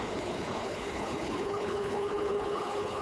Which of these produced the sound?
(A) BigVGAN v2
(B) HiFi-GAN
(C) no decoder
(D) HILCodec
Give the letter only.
D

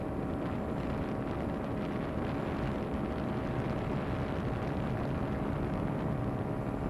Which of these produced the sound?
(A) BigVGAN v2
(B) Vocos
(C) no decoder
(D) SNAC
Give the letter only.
C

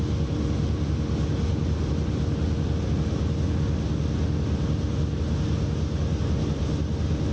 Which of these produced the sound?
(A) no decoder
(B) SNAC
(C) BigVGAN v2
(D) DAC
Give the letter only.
A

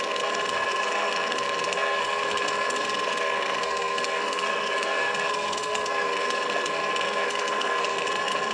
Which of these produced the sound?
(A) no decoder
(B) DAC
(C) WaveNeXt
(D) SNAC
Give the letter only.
D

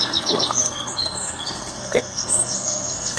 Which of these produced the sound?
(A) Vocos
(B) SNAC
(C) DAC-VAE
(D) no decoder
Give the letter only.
B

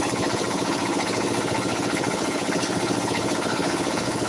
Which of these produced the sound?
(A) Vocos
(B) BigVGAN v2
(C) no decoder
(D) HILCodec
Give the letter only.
D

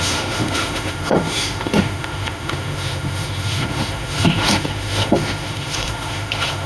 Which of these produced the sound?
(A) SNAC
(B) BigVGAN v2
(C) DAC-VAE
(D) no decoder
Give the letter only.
C